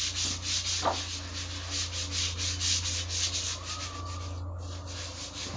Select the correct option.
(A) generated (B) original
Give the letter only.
B